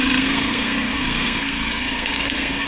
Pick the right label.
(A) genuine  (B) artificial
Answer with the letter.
B